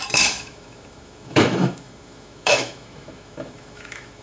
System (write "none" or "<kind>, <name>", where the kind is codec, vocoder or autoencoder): autoencoder, DAC-VAE